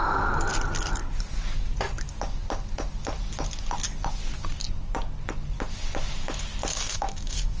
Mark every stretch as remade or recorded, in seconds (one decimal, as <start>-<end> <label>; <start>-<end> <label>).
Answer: 0.0-6.7 recorded; 6.7-7.6 remade